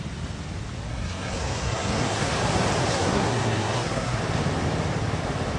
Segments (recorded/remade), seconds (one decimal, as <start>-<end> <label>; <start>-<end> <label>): 0.0-0.9 recorded; 0.9-2.3 remade; 2.3-2.9 recorded; 2.9-4.2 remade; 4.2-5.6 recorded